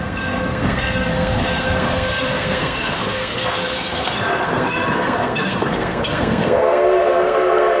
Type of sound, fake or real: fake